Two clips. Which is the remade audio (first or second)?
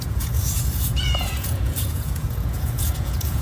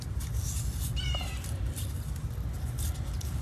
first